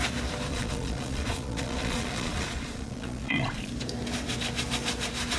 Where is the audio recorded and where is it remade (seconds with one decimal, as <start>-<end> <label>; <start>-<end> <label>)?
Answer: 0.0-0.5 recorded; 0.5-3.7 remade; 3.7-5.4 recorded

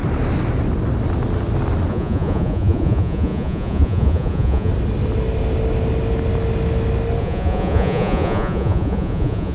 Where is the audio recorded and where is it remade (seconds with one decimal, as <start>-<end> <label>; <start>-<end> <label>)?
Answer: 0.0-1.9 recorded; 1.9-4.7 remade; 4.7-7.2 recorded; 7.2-9.5 remade

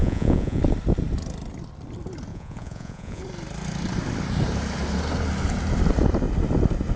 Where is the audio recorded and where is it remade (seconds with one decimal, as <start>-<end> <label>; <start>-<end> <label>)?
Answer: 0.0-0.6 remade; 0.6-2.3 recorded; 2.3-3.2 remade; 3.2-7.0 recorded

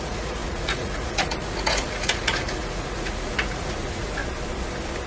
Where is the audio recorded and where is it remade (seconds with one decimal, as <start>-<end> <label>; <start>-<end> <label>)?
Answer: 0.0-4.2 remade; 4.2-5.1 recorded

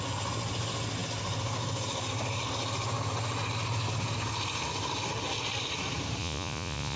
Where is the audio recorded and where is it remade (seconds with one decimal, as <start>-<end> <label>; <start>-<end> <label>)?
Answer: 0.0-6.2 recorded; 6.2-7.0 remade

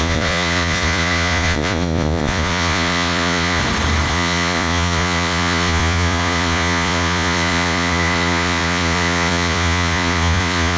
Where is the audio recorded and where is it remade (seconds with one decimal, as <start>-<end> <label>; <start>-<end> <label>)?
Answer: 0.0-3.6 remade; 3.6-4.1 recorded; 4.1-10.8 remade

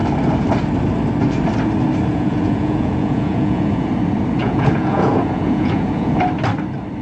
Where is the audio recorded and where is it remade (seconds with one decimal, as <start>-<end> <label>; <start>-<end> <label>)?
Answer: 0.0-2.1 recorded; 2.1-3.9 remade; 3.9-4.4 recorded; 4.4-6.1 remade; 6.1-7.0 recorded

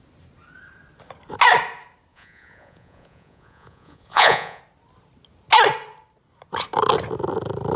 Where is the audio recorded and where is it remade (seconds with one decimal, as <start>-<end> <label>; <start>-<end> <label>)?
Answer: 0.0-2.1 recorded; 2.1-4.6 remade; 4.6-7.8 recorded